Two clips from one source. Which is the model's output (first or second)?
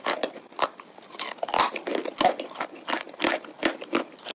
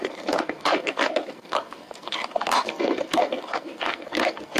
second